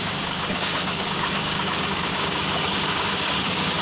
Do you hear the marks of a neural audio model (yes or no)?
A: yes